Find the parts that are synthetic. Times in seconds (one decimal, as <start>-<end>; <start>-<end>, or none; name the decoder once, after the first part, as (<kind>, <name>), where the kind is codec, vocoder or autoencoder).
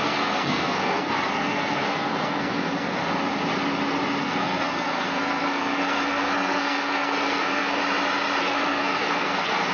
0.0-3.0 (codec, SNAC); 4.2-7.8; 8.4-9.7